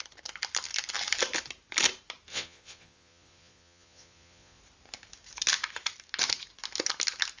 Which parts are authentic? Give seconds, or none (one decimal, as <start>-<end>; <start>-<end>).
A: 0.0-2.3; 4.6-7.4